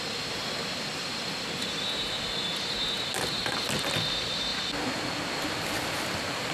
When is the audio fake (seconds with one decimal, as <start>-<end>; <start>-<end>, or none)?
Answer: none